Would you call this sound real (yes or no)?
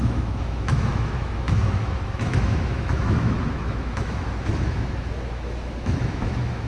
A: no